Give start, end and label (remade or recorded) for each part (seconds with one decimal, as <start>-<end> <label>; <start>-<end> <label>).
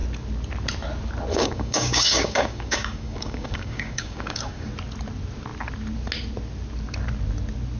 0.0-1.3 recorded; 1.3-4.7 remade; 4.7-7.8 recorded